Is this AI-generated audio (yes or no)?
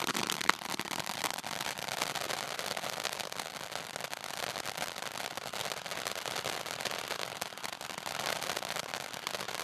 no